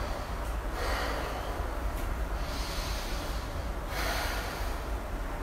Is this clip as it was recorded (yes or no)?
yes